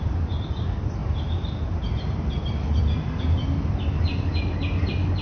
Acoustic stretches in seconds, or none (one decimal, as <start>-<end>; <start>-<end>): 0.0-5.2